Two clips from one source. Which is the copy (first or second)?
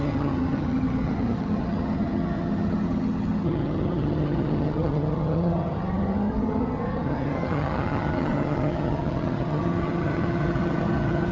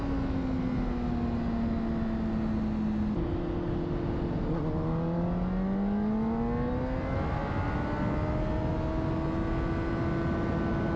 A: first